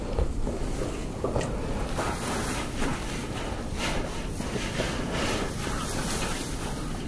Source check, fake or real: real